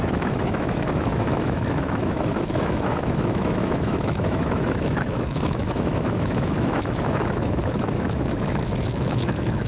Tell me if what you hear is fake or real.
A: fake